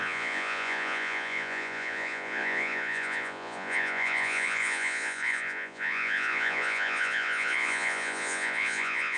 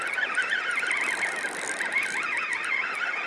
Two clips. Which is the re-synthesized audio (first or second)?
first